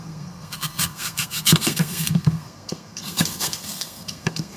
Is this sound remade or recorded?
remade